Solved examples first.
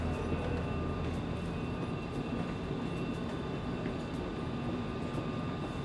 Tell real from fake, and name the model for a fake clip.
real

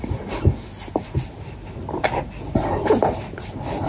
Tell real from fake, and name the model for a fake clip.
real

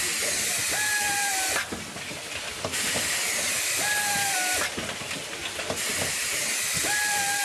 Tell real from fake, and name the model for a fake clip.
real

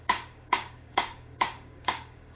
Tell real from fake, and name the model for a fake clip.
fake, codec, DAC